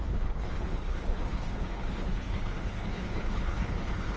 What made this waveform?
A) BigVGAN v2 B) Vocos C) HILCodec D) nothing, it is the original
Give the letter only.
C